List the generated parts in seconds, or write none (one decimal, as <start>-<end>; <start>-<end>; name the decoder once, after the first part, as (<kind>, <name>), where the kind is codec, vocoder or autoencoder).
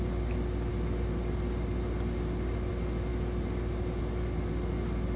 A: none